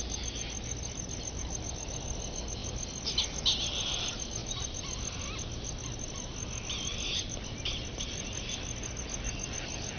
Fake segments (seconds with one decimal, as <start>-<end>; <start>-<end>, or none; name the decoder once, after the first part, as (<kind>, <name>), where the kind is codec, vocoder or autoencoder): none